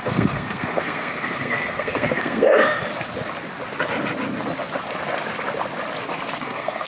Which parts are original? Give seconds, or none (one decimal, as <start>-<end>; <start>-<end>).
2.8-6.4